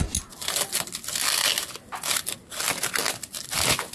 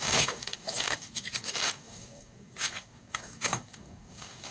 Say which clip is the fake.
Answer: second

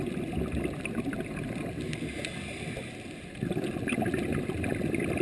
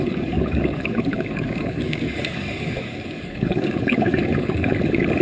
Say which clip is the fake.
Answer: second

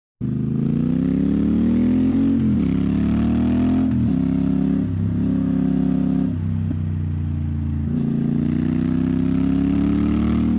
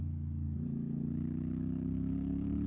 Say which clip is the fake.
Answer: second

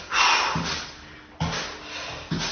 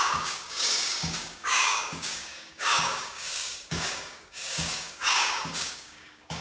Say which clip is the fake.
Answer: second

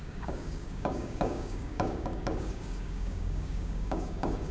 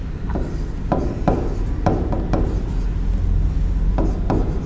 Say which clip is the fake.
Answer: first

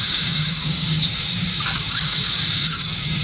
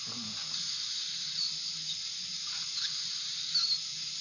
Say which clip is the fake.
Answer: first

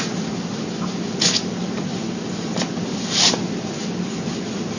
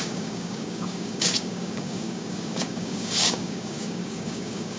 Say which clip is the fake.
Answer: second